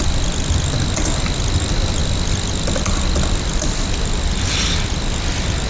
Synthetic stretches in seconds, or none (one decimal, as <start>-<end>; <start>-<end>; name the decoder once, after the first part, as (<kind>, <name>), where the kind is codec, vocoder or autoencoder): none